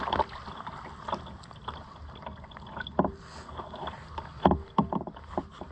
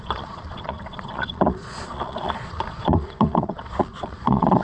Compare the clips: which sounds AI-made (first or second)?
second